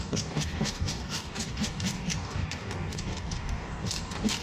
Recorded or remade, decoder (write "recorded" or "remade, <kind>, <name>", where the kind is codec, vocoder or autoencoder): remade, codec, DAC